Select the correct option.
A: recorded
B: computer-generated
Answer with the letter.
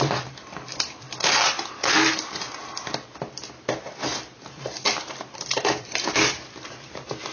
B